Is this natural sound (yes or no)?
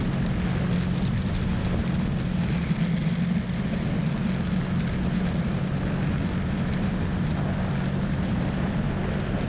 yes